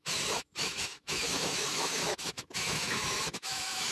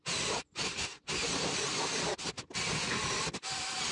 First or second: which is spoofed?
first